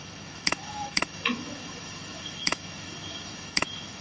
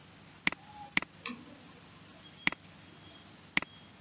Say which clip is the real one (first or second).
second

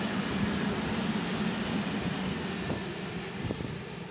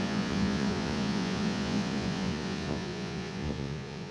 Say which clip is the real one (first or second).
first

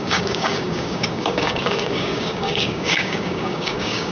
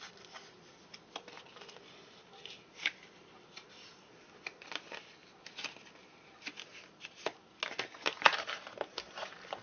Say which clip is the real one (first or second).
second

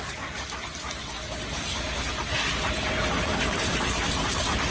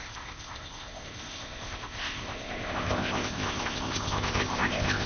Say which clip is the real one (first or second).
first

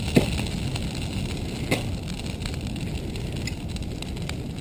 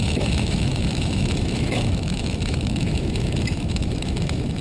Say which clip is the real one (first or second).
first